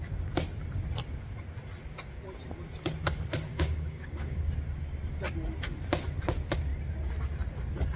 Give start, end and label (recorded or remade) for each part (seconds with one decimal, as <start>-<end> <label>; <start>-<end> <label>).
0.0-3.5 recorded; 3.5-4.5 remade; 4.5-8.0 recorded